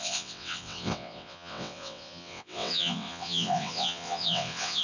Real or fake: fake